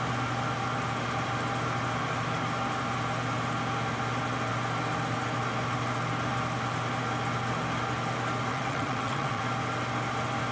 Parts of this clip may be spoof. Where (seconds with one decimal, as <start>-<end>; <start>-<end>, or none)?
8.5-9.4